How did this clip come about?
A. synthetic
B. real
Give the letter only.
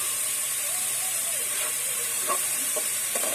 A